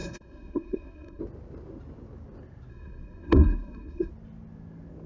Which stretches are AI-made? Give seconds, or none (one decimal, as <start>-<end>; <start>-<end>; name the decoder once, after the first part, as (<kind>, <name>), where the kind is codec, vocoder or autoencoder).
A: 0.0-1.2 (codec, SNAC); 2.7-4.1